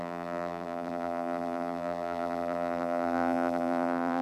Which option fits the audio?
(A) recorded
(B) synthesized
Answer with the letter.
B